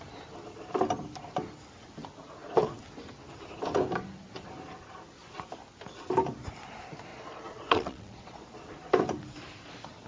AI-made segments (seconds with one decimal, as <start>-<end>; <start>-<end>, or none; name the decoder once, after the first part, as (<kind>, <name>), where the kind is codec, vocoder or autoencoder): 7.1-8.6 (vocoder, Vocos)